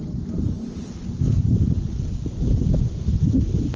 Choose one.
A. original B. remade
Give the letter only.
A